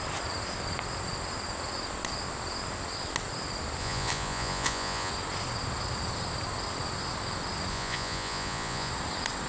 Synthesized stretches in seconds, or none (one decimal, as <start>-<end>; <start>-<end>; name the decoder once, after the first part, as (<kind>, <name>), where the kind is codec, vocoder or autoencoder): 3.8-5.1 (vocoder, Vocos); 7.7-8.9